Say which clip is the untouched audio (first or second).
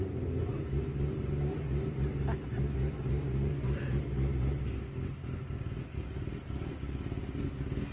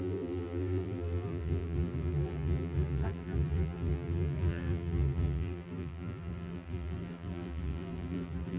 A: first